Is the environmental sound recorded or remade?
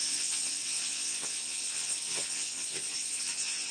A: remade